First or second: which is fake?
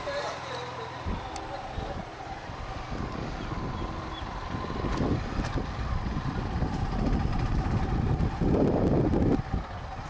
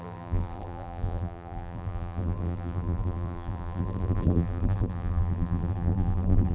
second